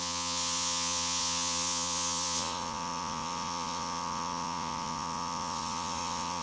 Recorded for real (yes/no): no